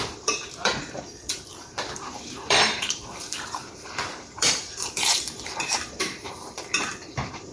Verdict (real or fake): fake